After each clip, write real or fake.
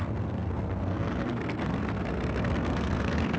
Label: fake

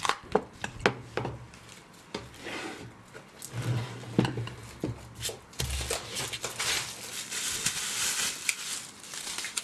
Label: real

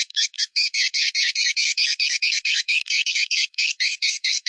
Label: fake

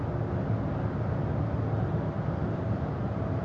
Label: real